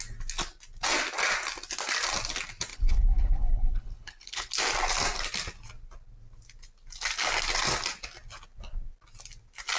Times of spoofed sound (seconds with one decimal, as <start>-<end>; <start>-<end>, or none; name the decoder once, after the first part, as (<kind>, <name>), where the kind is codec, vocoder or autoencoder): 2.7-4.5 (codec, HILCodec)